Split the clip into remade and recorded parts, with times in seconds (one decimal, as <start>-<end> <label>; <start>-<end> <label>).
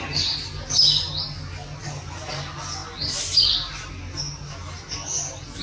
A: 0.0-5.6 recorded